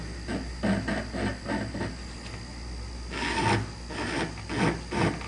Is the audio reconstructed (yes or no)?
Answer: no